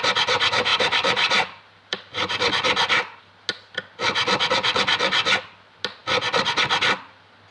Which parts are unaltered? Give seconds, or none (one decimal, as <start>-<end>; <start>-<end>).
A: 0.0-0.7; 3.2-7.5